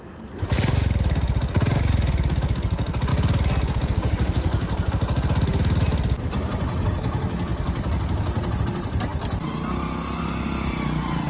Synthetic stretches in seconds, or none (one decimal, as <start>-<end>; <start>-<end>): none